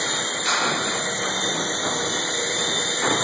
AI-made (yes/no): no